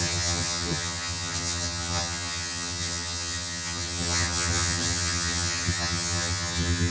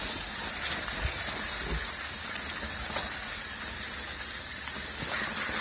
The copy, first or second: first